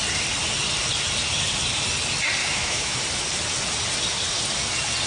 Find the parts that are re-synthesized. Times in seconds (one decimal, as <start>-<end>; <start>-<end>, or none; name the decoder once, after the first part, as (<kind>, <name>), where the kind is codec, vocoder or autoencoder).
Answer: 2.4-3.0 (autoencoder, DAC-VAE)